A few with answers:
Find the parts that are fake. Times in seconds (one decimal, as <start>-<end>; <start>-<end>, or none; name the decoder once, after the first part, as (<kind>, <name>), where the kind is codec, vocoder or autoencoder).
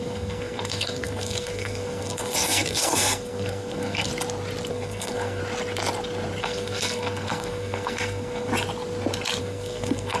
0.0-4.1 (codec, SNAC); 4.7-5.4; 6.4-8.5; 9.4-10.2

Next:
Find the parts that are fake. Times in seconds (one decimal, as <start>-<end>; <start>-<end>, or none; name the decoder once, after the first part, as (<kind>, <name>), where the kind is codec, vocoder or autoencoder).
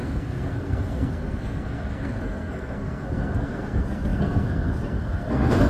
0.0-5.7 (codec, SNAC)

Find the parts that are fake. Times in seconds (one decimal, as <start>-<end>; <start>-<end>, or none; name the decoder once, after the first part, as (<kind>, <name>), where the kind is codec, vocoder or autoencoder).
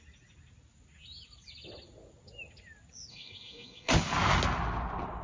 3.1-3.9 (codec, DAC)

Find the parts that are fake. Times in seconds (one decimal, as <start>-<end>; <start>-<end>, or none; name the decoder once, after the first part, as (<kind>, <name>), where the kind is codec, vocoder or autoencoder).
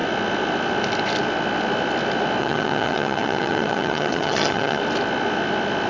2.4-4.8 (vocoder, HiFi-GAN)